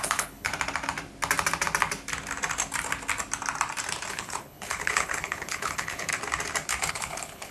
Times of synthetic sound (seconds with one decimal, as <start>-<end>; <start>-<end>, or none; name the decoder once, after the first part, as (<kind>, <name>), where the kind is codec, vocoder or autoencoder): 0.0-0.5 (codec, HILCodec); 4.1-6.1; 6.9-7.5